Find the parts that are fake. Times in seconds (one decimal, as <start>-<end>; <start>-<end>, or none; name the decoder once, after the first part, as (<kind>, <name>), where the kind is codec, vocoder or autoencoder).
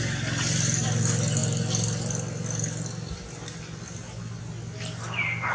none